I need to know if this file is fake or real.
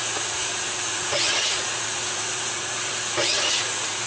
fake